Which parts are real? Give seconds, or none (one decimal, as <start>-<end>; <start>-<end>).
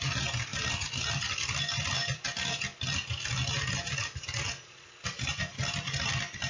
0.0-6.5